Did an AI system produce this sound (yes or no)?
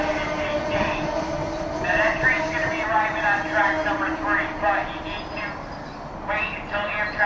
no